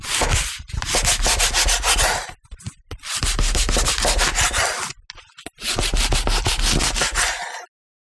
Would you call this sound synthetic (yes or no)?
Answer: no